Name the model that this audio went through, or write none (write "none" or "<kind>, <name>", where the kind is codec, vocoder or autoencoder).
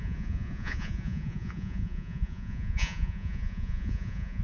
vocoder, Vocos